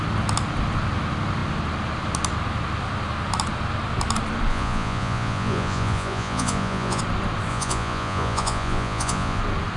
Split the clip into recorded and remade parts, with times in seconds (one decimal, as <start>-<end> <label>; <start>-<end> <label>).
0.0-4.5 recorded; 4.5-7.0 remade; 7.0-7.5 recorded; 7.5-9.4 remade; 9.4-9.8 recorded